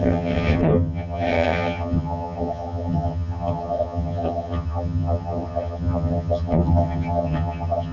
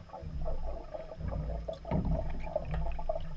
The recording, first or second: second